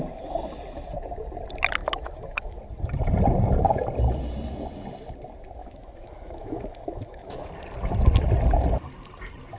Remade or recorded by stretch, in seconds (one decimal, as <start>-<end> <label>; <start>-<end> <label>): 0.0-1.8 recorded; 1.8-2.6 remade; 2.6-5.6 recorded; 5.6-7.5 remade; 7.5-9.6 recorded